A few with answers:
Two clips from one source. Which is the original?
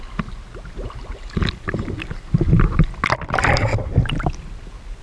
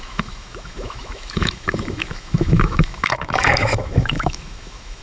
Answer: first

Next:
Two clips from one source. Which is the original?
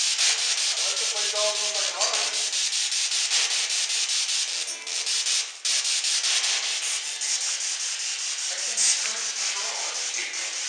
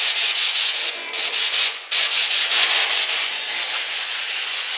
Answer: first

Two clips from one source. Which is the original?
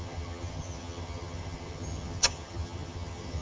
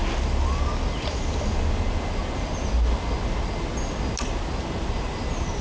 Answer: second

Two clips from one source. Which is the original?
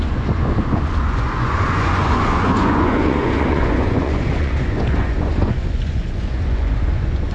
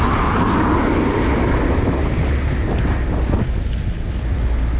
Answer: second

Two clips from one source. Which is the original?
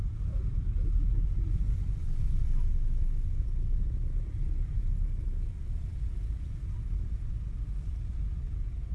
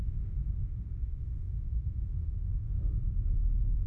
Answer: first